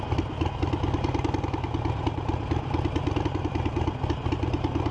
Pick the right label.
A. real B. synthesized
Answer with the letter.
A